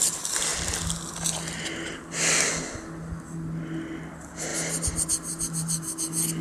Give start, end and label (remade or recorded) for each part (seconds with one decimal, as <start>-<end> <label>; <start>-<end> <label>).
0.0-6.4 recorded